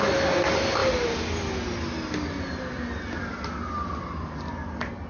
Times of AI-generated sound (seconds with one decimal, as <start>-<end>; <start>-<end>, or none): none

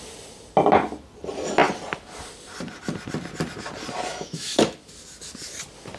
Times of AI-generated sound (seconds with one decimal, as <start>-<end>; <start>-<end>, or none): 4.1-4.6

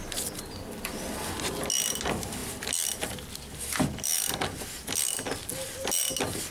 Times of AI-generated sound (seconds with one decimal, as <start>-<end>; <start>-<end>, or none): none